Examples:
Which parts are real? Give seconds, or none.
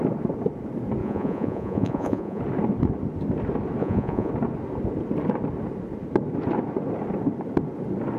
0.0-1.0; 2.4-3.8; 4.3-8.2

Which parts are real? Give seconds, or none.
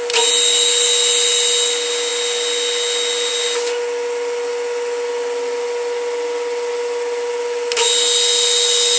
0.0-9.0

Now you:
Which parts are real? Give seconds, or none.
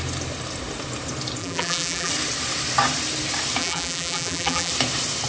0.0-1.4; 2.1-3.6; 4.7-5.3